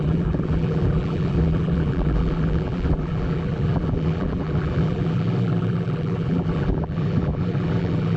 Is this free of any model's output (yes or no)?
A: no